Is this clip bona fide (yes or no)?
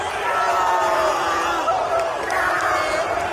yes